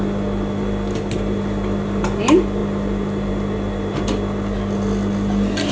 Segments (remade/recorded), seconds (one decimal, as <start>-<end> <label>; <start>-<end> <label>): 0.0-5.7 recorded